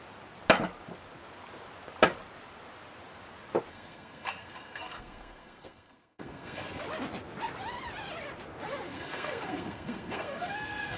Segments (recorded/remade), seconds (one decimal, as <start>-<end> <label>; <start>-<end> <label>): 0.0-3.7 recorded; 3.7-6.8 remade; 6.8-8.9 recorded; 8.9-11.0 remade